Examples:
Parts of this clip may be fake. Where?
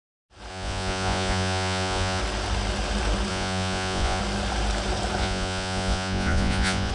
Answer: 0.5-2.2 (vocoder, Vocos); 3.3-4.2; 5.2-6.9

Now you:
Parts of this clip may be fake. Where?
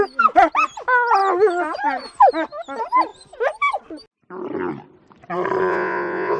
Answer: 5.7-6.4 (vocoder, Vocos)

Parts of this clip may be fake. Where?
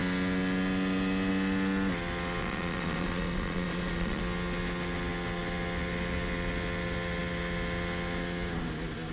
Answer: 2.4-4.2 (vocoder, Vocos)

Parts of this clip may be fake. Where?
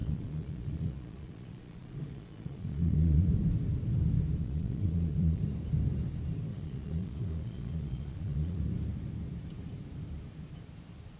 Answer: 0.0-3.3 (vocoder, Vocos); 4.4-5.4; 6.5-8.6